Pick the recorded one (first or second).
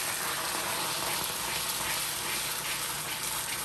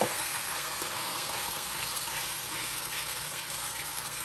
first